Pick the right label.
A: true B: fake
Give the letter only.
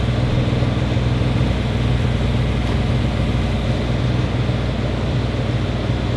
A